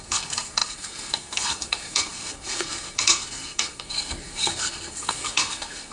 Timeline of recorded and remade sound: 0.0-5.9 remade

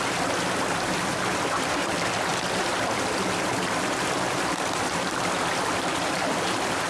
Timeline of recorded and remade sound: 0.0-6.9 recorded